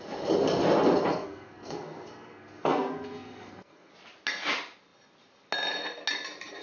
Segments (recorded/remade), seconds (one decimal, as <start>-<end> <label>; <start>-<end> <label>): 0.0-1.1 recorded; 1.1-3.9 remade; 3.9-6.6 recorded